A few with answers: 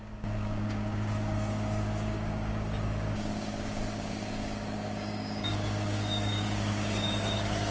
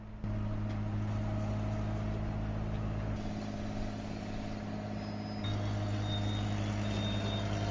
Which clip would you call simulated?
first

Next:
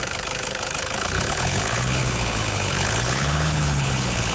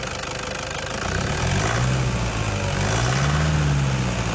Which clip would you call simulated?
first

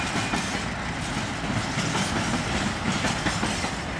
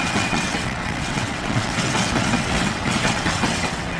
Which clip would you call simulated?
second